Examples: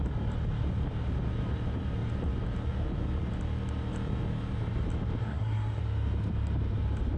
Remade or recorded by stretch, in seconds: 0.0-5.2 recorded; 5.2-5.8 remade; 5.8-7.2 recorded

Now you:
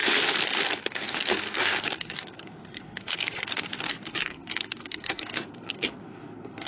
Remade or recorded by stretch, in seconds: 0.0-0.8 recorded; 0.8-6.7 remade

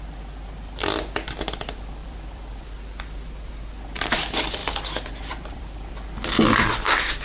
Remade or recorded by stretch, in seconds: 0.0-2.0 recorded; 2.0-2.6 remade; 2.6-4.6 recorded; 4.6-6.7 remade; 6.7-7.2 recorded